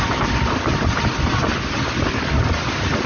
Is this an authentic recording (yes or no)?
yes